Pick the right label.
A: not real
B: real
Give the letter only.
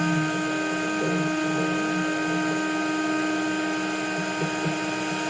B